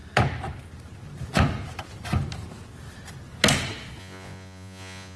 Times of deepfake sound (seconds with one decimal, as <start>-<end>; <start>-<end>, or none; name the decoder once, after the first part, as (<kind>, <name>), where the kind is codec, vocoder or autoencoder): 4.0-5.2 (vocoder, Vocos)